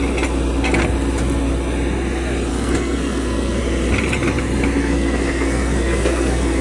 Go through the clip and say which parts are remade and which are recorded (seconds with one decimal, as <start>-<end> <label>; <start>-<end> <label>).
0.0-2.5 recorded; 2.5-3.6 remade; 3.6-4.8 recorded; 4.8-6.6 remade